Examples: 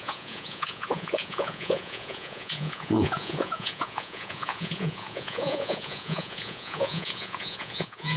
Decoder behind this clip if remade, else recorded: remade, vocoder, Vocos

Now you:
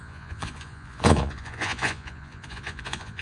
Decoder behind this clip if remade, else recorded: remade, vocoder, Vocos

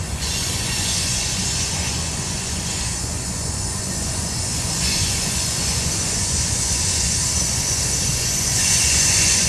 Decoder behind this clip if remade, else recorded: remade, vocoder, Vocos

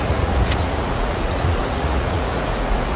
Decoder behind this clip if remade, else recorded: remade, vocoder, Vocos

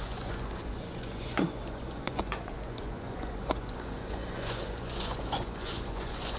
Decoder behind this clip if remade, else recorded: remade, vocoder, Vocos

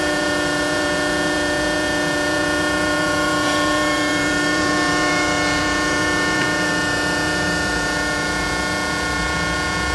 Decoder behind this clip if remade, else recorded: remade, vocoder, Vocos